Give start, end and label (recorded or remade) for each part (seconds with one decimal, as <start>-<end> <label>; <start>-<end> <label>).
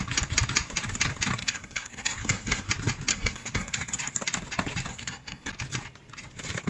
0.0-1.4 recorded; 1.4-2.7 remade; 2.7-3.1 recorded; 3.1-4.0 remade; 4.0-4.9 recorded; 4.9-5.5 remade; 5.5-6.7 recorded